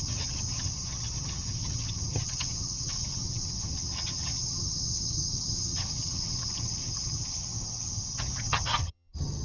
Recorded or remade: remade